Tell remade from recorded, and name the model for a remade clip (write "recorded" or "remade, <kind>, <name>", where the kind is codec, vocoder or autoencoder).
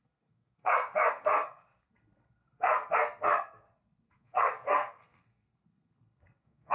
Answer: remade, codec, SNAC